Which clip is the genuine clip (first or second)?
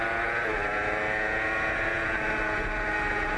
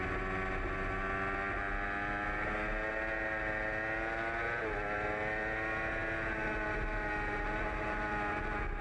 second